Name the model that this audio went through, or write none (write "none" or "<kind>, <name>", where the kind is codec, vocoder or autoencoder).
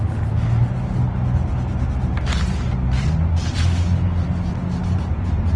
none